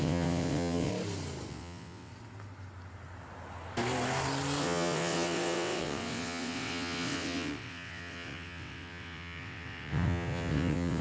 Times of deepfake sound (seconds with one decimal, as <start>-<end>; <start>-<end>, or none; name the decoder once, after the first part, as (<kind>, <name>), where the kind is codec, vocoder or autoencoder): 0.0-0.9 (vocoder, WaveNeXt); 1.5-2.1; 4.6-11.0